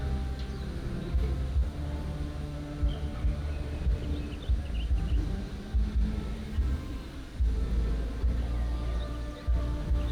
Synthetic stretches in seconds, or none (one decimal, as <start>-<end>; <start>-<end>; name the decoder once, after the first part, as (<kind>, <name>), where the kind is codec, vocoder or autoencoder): none